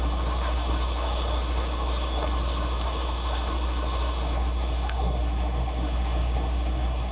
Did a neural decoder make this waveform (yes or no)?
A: yes